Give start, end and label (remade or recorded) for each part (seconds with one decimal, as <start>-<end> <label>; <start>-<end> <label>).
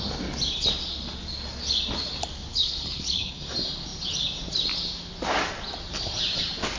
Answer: 0.0-2.5 recorded; 2.5-3.4 remade; 3.4-6.8 recorded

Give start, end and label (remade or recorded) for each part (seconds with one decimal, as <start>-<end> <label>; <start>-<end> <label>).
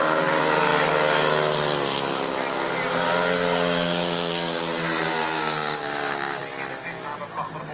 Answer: 0.0-5.4 recorded; 5.4-6.4 remade; 6.4-7.7 recorded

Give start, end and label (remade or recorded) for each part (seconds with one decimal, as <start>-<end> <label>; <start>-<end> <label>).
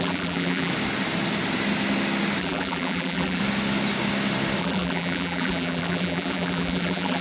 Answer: 0.0-0.7 remade; 0.7-2.4 recorded; 2.4-3.4 remade; 3.4-4.6 recorded; 4.6-7.2 remade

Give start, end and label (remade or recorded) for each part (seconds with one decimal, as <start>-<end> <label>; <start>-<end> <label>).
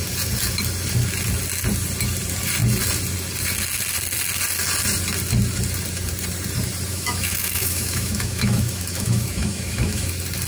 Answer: 0.0-6.9 recorded; 6.9-10.1 remade; 10.1-10.5 recorded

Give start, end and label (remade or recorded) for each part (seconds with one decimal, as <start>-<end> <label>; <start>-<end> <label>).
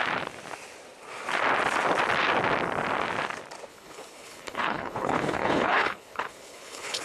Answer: 0.0-3.7 recorded; 3.7-7.0 remade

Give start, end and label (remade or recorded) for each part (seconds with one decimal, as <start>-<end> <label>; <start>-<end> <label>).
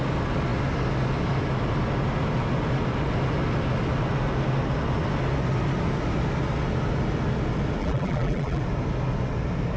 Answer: 0.0-7.8 recorded; 7.8-8.6 remade; 8.6-9.8 recorded